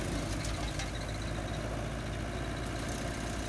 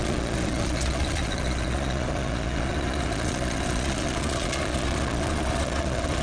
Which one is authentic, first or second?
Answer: first